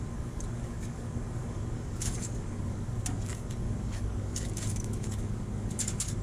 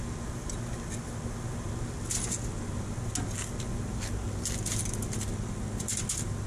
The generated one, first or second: first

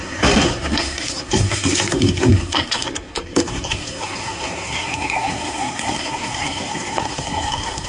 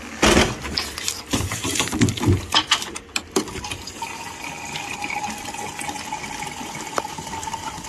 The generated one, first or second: first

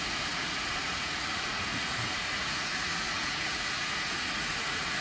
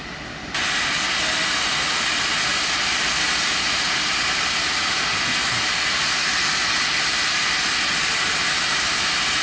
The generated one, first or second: first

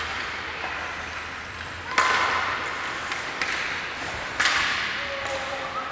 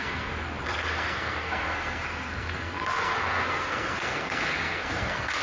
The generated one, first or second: second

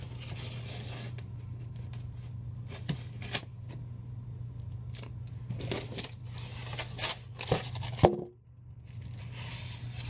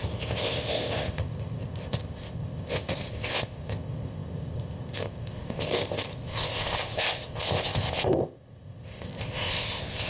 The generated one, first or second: second